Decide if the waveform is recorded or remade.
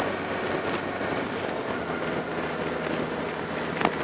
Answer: recorded